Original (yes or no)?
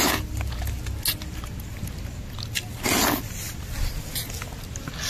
yes